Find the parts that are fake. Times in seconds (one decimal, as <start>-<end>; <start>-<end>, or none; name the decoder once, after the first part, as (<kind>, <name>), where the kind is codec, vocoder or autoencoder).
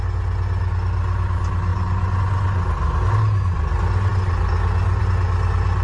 1.7-2.2 (vocoder, BigVGAN v2)